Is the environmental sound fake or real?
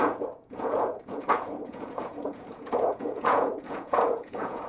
fake